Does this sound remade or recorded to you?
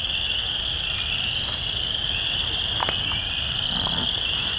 recorded